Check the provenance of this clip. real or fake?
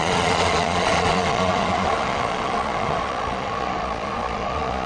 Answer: fake